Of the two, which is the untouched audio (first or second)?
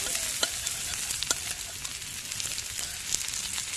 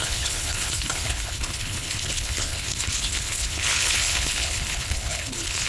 first